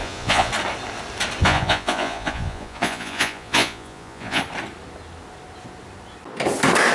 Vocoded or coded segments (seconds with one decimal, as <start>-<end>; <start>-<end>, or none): 0.0-0.5; 1.4-4.4